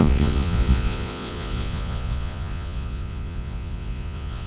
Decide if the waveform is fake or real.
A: fake